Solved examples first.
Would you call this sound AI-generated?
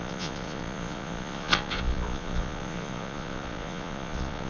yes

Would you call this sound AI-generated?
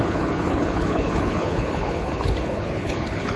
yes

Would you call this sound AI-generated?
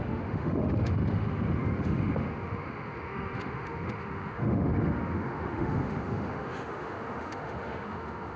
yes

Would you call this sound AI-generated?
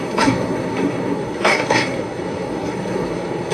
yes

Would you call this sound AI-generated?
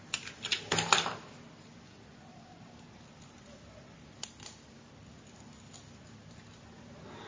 no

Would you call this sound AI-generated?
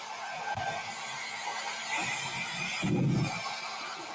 no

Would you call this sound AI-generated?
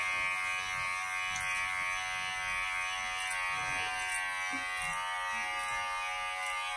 no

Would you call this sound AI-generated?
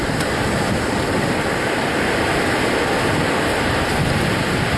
no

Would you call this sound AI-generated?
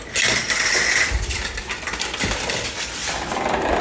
no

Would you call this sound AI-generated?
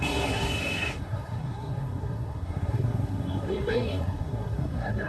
yes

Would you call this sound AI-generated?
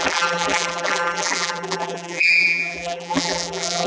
yes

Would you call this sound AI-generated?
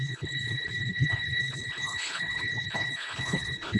yes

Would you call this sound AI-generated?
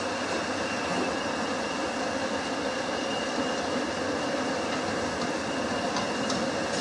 no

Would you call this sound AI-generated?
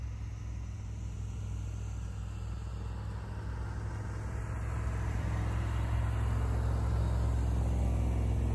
no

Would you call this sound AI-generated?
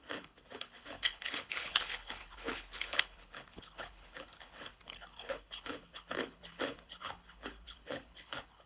yes